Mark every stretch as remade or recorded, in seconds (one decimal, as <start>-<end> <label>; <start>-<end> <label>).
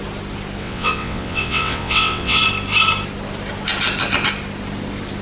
0.0-0.6 recorded; 0.6-2.4 remade; 2.4-5.2 recorded